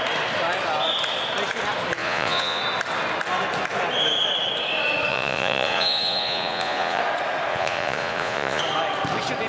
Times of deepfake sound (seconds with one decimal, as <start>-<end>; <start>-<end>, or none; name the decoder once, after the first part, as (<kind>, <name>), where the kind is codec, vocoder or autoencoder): 2.0-2.6 (vocoder, Vocos); 5.1-7.0; 7.5-8.6